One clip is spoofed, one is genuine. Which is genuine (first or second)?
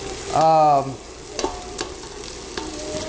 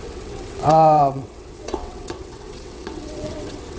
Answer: first